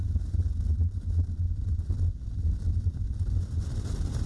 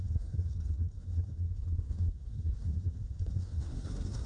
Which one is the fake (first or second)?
second